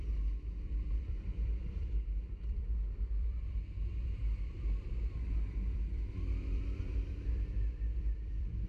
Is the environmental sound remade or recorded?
remade